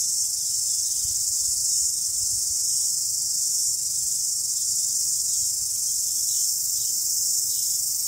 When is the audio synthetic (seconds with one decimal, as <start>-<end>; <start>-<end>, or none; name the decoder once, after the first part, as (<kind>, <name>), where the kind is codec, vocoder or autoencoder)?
1.6-2.5 (vocoder, BigVGAN v2)